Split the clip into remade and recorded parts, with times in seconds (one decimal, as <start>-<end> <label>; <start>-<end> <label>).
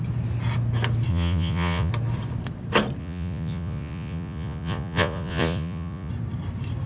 0.0-1.1 recorded; 1.1-1.9 remade; 1.9-3.0 recorded; 3.0-6.1 remade; 6.1-6.9 recorded